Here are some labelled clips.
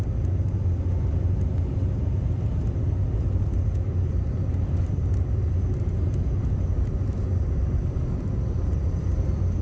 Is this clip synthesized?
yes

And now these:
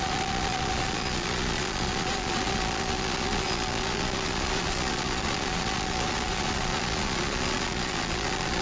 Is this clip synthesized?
yes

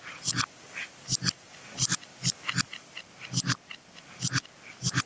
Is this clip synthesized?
no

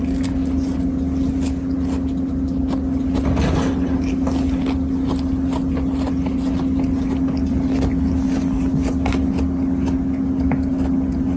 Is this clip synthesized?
no